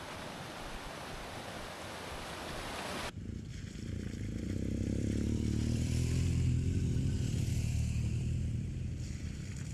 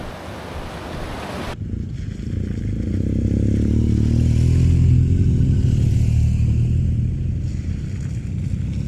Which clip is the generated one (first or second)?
first